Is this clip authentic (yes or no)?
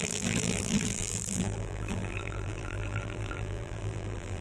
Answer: no